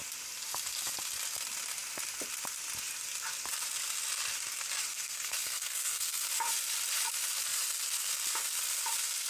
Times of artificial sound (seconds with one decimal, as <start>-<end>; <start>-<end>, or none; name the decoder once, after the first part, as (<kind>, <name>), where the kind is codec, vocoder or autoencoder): 4.9-6.2 (codec, SNAC)